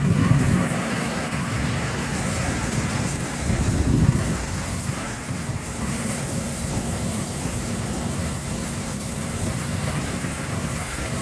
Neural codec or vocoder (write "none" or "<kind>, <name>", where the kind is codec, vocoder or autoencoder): codec, SNAC